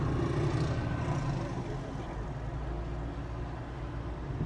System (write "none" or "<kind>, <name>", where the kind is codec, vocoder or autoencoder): none